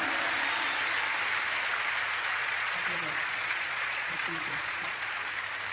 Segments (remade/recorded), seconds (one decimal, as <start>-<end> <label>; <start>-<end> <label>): 0.0-2.4 recorded; 2.4-5.1 remade; 5.1-5.7 recorded